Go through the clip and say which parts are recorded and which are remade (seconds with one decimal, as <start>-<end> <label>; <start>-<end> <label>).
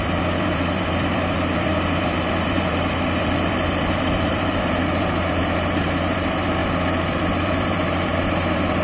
0.0-6.6 remade; 6.6-7.1 recorded; 7.1-8.8 remade